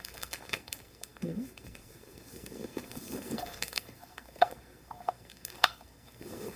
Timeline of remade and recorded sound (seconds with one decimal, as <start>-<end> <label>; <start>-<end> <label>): 0.0-6.6 remade